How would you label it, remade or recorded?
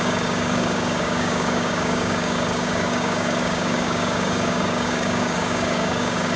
remade